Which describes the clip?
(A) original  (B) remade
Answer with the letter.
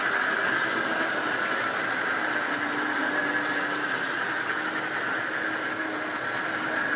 A